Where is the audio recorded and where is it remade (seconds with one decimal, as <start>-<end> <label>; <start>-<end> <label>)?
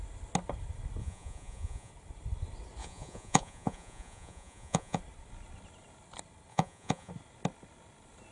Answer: 0.0-1.0 recorded; 1.0-1.9 remade; 1.9-2.8 recorded; 2.8-5.0 remade; 5.0-6.5 recorded; 6.5-7.1 remade; 7.1-8.3 recorded